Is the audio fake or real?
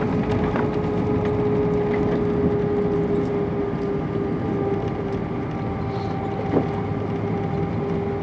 real